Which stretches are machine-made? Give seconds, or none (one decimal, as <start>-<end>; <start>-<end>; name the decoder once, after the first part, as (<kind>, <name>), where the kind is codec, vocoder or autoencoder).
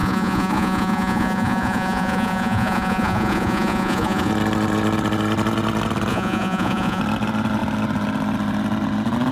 0.0-4.3 (vocoder, Vocos); 6.1-7.0